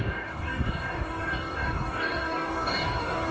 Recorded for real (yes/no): no